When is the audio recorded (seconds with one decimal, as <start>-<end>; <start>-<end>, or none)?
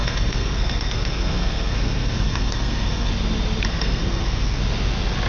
3.1-3.7; 4.6-5.3